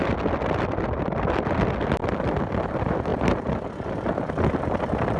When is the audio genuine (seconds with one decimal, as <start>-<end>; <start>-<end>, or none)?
0.0-5.2